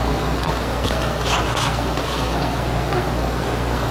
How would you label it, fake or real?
fake